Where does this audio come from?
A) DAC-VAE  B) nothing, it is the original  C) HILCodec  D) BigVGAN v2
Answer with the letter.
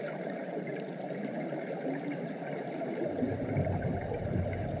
D